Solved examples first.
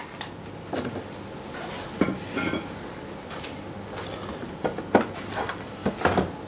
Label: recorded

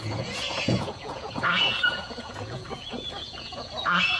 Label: remade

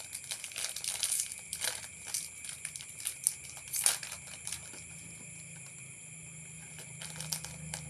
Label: recorded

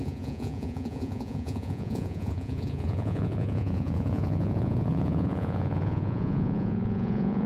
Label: remade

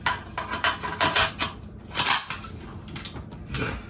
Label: recorded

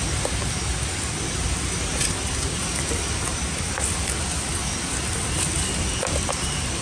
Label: recorded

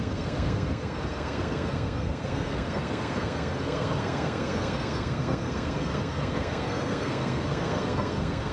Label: remade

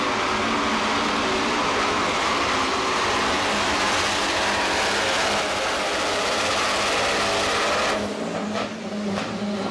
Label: recorded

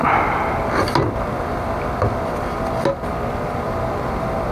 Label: recorded